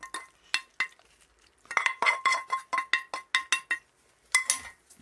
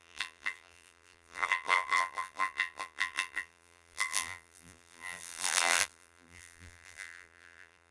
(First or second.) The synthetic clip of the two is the second